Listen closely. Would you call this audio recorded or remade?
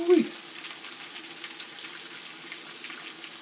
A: recorded